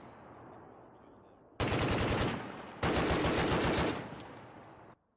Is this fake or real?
real